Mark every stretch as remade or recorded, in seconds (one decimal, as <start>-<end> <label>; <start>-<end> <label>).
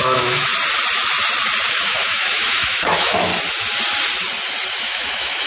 0.0-0.5 remade; 0.5-1.7 recorded; 1.7-3.3 remade; 3.3-4.8 recorded; 4.8-5.5 remade